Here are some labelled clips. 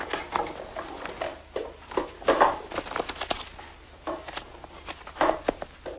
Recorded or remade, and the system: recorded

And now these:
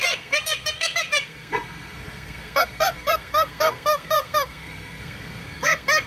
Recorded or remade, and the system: remade, codec, SNAC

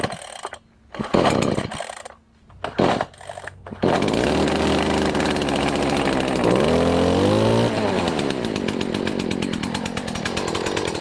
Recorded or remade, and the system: recorded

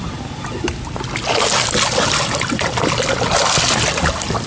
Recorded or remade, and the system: recorded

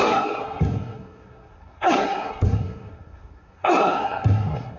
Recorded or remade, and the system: remade, codec, SNAC